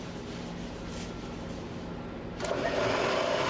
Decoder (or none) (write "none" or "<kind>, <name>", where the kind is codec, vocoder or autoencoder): none